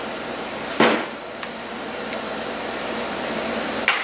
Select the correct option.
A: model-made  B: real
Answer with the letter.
A